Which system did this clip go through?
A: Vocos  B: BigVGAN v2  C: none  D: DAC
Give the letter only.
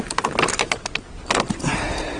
C